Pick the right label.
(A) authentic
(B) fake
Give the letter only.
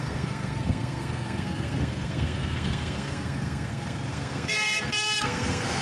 B